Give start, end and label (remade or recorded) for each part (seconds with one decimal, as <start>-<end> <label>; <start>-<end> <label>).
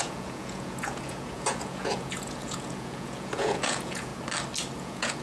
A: 0.0-4.1 remade; 4.1-4.8 recorded; 4.8-5.2 remade